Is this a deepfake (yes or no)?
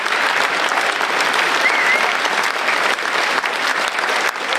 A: no